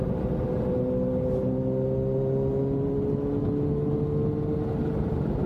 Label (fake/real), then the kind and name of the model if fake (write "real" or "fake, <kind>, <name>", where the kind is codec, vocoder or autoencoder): real